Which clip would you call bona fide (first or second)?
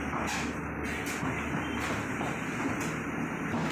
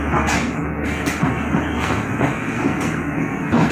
first